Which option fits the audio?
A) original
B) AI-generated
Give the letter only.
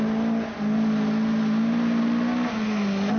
A